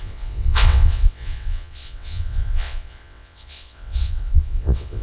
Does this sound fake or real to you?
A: fake